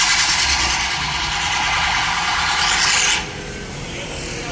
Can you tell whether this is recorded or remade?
recorded